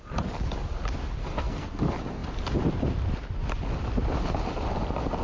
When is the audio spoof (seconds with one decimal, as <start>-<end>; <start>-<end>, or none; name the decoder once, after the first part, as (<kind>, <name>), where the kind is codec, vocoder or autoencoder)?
1.2-1.8 (codec, SNAC)

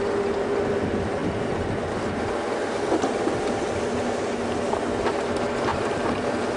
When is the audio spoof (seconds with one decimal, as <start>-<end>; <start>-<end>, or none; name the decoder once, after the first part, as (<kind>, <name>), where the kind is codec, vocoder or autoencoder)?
none

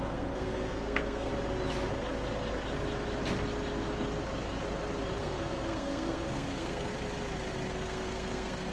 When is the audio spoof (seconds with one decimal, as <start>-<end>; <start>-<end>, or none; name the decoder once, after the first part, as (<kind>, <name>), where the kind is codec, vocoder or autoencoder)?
0.0-1.3 (codec, SNAC); 5.2-6.9; 7.7-8.7

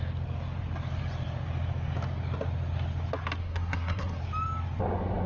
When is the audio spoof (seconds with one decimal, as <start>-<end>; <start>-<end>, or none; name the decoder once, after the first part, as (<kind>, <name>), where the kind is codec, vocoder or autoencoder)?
3.4-4.2 (codec, SNAC)